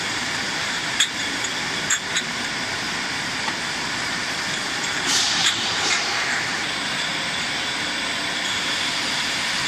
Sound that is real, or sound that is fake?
fake